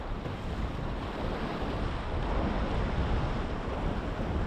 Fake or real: real